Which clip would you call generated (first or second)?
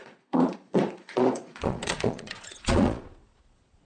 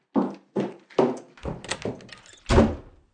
first